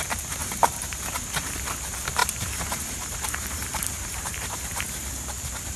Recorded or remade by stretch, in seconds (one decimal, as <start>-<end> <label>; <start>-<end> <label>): 0.0-0.4 recorded; 0.4-1.1 remade; 1.1-2.2 recorded; 2.2-5.3 remade; 5.3-5.8 recorded